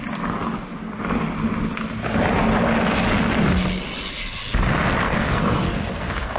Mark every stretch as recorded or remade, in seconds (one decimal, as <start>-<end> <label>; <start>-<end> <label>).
0.0-5.0 recorded; 5.0-6.4 remade